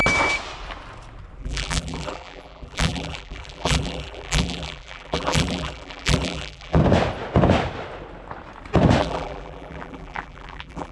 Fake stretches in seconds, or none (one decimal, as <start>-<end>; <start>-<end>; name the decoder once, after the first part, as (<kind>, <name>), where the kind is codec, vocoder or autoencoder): 1.4-6.8 (vocoder, BigVGAN v2); 9.0-10.9